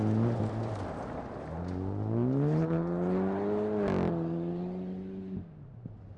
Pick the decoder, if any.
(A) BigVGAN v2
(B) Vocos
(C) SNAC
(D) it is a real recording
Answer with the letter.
D